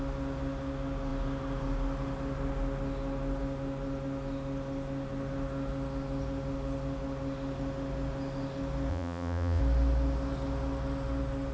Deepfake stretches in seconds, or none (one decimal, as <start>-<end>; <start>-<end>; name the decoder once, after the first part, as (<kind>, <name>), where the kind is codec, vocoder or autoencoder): 8.9-9.6 (vocoder, Vocos)